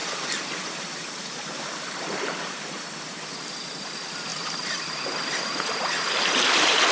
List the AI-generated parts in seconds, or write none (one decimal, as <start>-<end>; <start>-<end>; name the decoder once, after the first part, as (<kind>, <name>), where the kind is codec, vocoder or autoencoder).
0.0-3.3 (vocoder, BigVGAN v2); 4.3-6.9